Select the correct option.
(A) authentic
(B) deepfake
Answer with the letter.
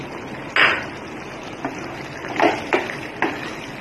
A